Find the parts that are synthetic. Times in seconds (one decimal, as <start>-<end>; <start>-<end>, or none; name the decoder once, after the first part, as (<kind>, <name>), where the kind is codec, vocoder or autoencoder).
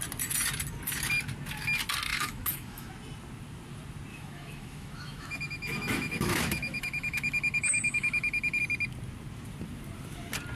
2.1-2.9 (autoencoder, DAC-VAE); 4.1-8.6